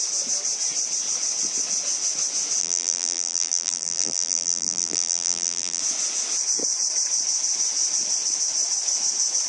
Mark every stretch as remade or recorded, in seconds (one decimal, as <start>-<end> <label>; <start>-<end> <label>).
0.0-2.6 recorded; 2.6-5.8 remade; 5.8-9.5 recorded